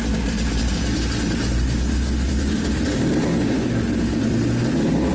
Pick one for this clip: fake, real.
real